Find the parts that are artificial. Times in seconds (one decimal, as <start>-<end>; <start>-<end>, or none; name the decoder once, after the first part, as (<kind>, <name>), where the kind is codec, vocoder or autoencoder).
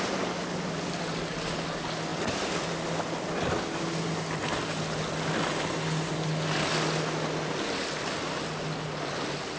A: none